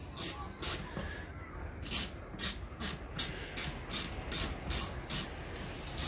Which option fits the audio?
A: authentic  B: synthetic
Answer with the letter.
A